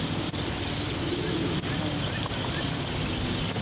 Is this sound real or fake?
real